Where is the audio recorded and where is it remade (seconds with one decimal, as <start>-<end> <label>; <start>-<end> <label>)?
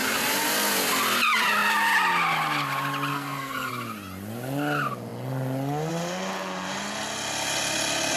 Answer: 0.0-3.1 recorded; 3.1-3.7 remade; 3.7-8.2 recorded